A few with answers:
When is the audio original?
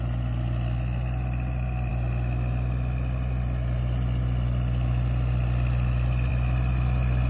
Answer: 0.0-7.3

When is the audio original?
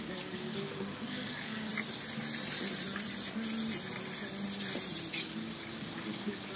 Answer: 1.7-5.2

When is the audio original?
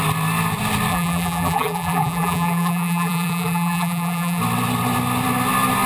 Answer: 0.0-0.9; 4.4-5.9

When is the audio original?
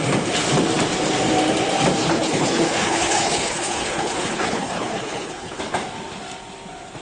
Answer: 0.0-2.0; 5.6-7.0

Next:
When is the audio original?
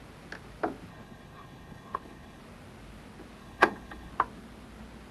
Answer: 0.0-0.9; 2.4-3.4; 4.1-5.1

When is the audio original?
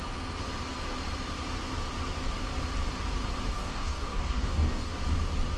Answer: 0.0-3.5; 4.9-5.6